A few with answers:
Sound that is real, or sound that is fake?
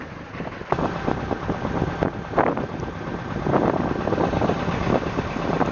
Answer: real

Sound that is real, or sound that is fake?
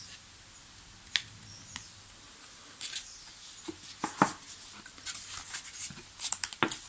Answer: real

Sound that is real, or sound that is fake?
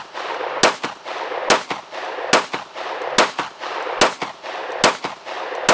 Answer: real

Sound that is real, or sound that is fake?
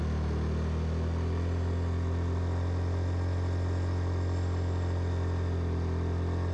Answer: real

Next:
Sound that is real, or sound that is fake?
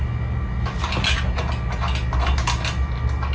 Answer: real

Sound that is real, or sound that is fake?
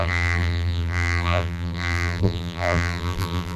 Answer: fake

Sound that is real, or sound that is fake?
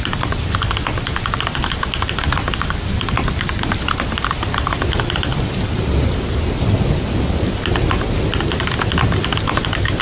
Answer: real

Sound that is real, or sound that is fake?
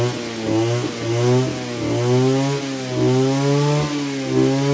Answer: real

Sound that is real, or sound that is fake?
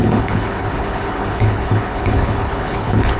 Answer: fake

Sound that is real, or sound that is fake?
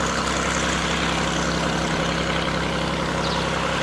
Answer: real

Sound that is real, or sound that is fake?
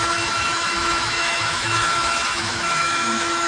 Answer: fake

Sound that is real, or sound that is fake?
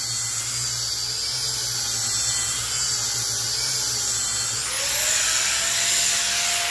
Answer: real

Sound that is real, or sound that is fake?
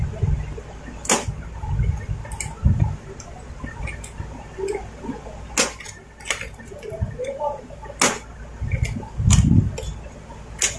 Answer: real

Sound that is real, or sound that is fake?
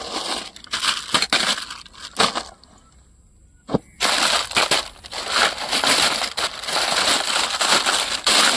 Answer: real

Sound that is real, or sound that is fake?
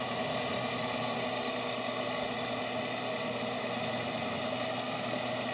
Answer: real